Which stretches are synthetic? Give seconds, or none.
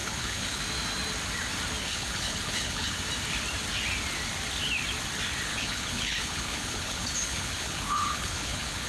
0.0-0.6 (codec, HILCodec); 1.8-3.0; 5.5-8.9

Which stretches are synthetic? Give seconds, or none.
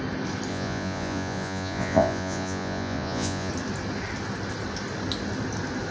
0.5-3.5 (vocoder, Vocos)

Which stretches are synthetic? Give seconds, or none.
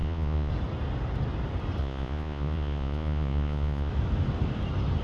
0.0-0.5 (vocoder, Vocos); 1.8-3.9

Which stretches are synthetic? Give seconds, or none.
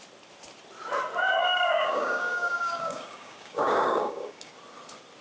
1.4-4.5 (codec, DAC)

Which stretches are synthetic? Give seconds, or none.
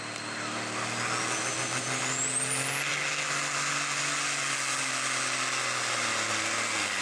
none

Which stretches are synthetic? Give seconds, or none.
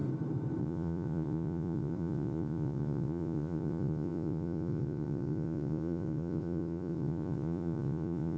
0.6-8.4 (vocoder, Vocos)